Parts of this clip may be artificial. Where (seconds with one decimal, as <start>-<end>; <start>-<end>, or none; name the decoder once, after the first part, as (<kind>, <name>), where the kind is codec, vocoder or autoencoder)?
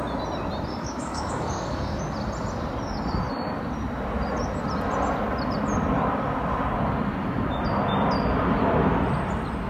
0.7-2.0 (codec, DAC)